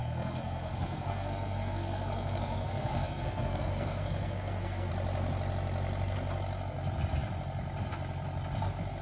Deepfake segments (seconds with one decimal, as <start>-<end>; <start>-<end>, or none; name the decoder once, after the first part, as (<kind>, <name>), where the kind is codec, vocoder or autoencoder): 0.0-4.9 (codec, SNAC)

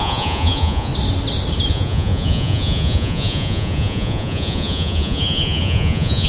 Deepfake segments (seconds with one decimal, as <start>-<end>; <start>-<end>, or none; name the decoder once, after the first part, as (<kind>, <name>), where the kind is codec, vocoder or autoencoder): 0.0-0.9 (vocoder, Vocos); 1.7-6.3